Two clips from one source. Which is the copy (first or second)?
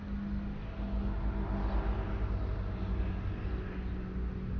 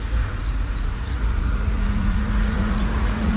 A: second